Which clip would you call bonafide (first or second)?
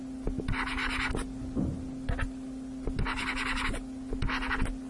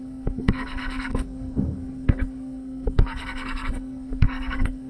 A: first